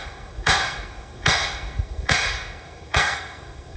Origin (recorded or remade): remade